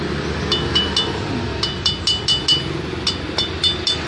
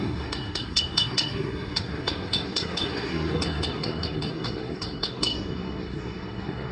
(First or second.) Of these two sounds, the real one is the first